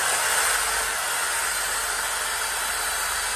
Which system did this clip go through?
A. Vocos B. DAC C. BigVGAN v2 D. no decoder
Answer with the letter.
D